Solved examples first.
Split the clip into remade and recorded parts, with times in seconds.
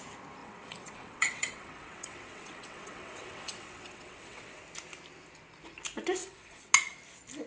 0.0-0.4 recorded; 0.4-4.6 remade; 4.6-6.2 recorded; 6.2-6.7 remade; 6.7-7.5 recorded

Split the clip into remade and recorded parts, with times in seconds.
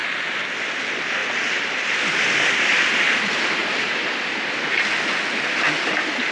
0.0-0.6 recorded; 0.6-3.6 remade; 3.6-5.3 recorded; 5.3-6.3 remade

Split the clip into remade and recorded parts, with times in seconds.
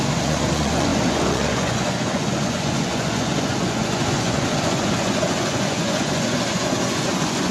0.0-7.5 remade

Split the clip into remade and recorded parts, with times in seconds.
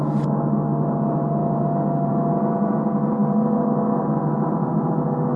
0.0-5.4 recorded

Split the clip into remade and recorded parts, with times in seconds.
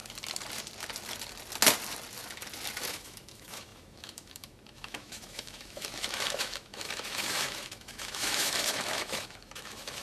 0.0-2.9 recorded; 2.9-10.0 remade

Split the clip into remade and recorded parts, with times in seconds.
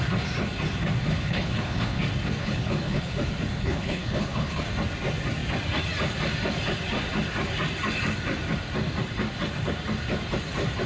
0.0-1.1 recorded; 1.1-2.0 remade; 2.0-2.4 recorded; 2.4-3.1 remade; 3.1-3.5 recorded; 3.5-4.6 remade; 4.6-10.9 recorded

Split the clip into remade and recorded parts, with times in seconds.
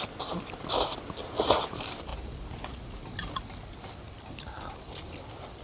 0.0-5.6 recorded